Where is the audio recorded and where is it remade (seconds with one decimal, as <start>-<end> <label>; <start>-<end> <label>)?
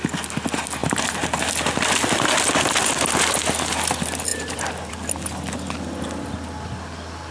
0.0-7.3 recorded